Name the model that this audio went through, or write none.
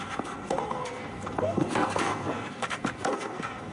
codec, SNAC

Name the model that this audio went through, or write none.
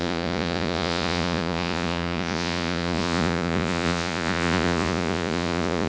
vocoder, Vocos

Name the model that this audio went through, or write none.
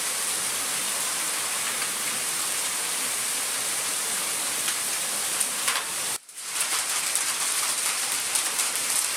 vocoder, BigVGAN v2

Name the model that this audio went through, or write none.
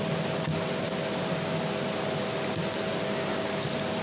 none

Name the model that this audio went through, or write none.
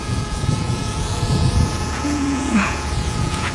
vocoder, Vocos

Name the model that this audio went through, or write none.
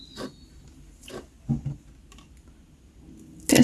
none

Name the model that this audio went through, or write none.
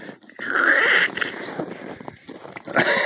none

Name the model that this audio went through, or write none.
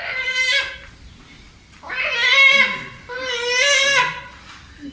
none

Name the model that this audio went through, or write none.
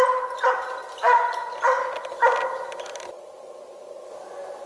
none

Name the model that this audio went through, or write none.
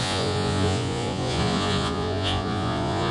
vocoder, Vocos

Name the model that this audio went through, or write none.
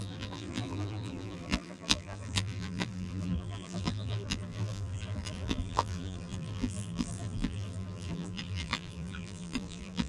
vocoder, BigVGAN v2